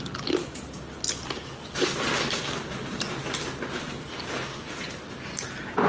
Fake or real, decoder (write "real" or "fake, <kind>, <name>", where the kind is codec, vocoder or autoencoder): real